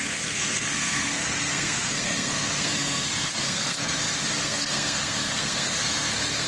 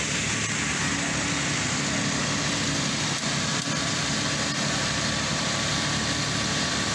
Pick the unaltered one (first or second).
second